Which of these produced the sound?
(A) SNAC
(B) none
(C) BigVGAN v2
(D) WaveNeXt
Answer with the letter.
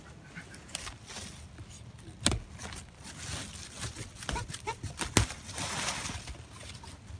B